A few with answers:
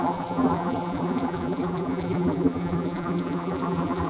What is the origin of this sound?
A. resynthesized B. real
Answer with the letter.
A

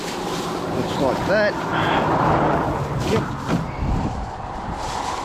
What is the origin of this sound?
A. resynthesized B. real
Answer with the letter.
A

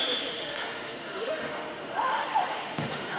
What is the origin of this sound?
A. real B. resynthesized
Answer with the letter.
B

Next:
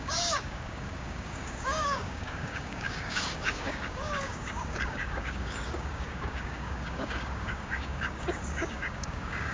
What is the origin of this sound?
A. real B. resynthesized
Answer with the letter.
B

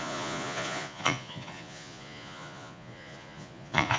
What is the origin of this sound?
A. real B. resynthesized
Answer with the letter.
B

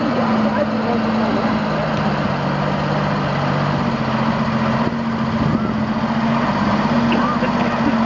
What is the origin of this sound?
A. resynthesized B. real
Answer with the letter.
B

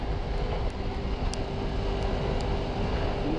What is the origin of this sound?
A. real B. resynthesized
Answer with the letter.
A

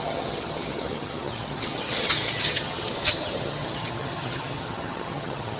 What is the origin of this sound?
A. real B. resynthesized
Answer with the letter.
B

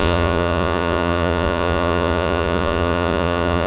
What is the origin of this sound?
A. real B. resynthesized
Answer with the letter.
B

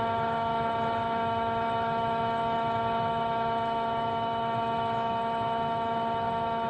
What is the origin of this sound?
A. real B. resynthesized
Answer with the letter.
B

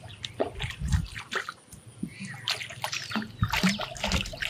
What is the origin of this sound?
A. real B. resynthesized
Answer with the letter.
A